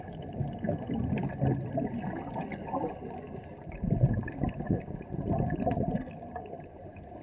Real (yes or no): yes